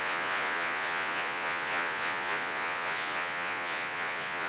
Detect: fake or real fake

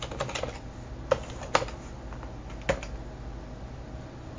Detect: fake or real real